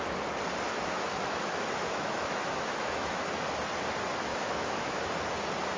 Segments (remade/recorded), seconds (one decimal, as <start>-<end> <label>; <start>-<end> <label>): 0.0-0.7 recorded; 0.7-3.2 remade; 3.2-4.3 recorded; 4.3-5.1 remade; 5.1-5.8 recorded